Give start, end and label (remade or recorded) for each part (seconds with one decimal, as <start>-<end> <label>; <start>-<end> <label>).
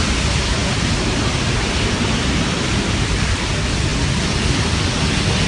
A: 0.0-3.9 recorded; 3.9-4.6 remade; 4.6-5.5 recorded